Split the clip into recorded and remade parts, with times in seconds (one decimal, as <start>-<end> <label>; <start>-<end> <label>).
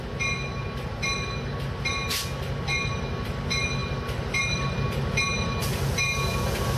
0.0-6.8 recorded